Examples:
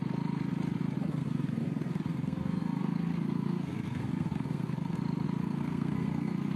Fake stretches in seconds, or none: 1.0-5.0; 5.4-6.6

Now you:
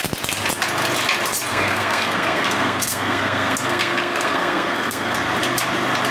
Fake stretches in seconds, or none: 1.5-5.2

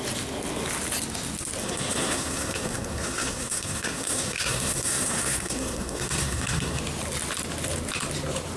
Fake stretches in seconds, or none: 1.6-6.8

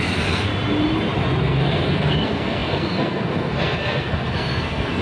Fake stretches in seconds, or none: 0.0-0.5; 1.4-5.0

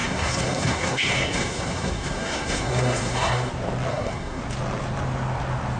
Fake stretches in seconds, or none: 0.0-3.5; 3.9-4.4

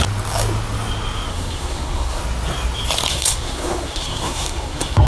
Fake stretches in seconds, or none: 1.3-2.2; 3.1-5.1

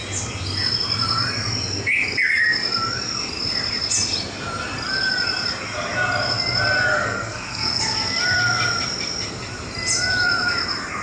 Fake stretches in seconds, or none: 6.9-7.8